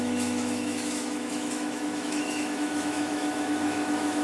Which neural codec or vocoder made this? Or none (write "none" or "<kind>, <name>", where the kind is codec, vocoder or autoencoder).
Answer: autoencoder, DAC-VAE